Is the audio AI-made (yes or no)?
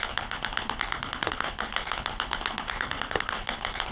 yes